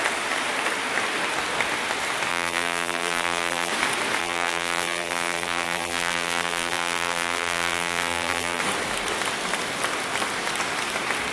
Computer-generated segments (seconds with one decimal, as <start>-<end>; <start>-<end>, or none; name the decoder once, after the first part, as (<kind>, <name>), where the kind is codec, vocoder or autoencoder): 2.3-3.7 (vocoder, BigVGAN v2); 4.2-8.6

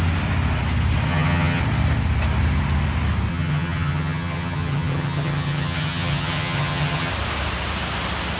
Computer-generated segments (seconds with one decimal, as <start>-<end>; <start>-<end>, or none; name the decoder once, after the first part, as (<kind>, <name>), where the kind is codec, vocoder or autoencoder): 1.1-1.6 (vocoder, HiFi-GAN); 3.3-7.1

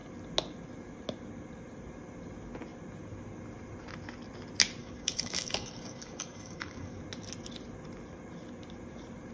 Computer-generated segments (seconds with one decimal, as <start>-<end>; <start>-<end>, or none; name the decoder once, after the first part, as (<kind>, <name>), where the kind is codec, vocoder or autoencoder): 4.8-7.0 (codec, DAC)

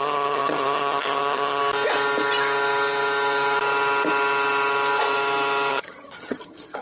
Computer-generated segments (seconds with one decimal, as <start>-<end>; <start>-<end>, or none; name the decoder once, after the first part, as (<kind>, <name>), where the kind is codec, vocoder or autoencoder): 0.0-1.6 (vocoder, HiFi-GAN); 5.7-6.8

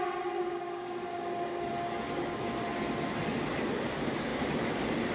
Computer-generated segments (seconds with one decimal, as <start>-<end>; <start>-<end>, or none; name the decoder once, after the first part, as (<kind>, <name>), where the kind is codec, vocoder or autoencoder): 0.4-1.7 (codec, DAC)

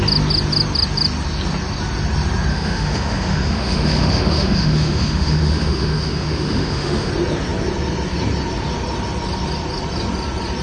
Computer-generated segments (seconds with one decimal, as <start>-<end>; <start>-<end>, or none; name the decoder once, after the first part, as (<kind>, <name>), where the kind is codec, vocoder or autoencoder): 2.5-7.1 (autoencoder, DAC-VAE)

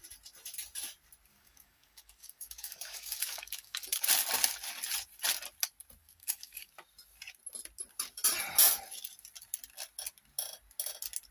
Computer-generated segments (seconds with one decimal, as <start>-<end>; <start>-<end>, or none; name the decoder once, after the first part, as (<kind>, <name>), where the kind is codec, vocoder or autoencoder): 1.3-4.1 (codec, DAC); 6.0-6.7